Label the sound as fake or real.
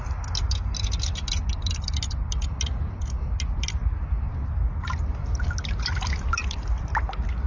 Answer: real